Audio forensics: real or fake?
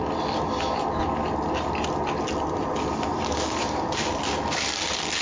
real